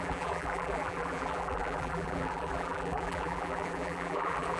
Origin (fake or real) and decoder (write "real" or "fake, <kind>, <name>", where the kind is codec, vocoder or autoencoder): fake, vocoder, BigVGAN v2